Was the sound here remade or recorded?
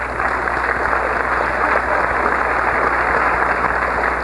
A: recorded